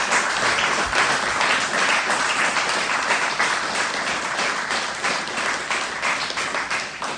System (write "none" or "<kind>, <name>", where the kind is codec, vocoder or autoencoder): none